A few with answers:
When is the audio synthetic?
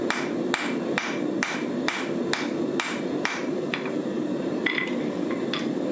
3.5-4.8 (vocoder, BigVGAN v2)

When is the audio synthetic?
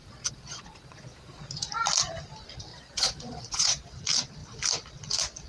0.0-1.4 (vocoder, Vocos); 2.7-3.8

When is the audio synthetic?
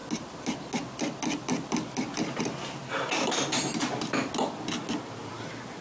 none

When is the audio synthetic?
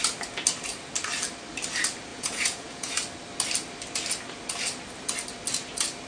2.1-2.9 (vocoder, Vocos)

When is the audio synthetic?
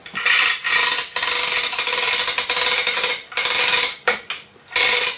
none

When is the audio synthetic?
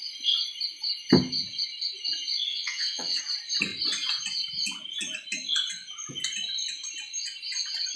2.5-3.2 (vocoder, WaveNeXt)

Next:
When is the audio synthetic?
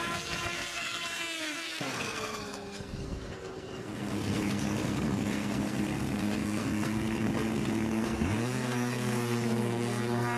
0.0-10.4 (codec, SNAC)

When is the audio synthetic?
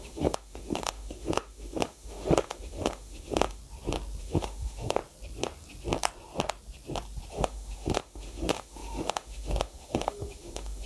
0.0-3.6 (autoencoder, DAC-VAE); 4.2-5.0; 7.3-10.9